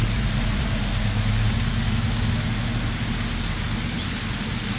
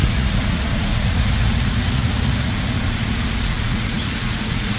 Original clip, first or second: first